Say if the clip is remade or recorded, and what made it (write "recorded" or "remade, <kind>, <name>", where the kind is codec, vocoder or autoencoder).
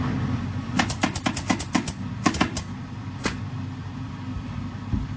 remade, vocoder, BigVGAN v2